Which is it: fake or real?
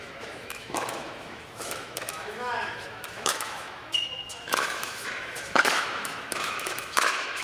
fake